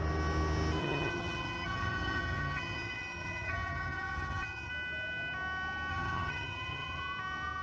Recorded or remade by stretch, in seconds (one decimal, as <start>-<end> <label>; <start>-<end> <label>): 0.0-0.8 recorded; 0.8-4.7 remade; 4.7-5.9 recorded; 5.9-7.0 remade; 7.0-7.6 recorded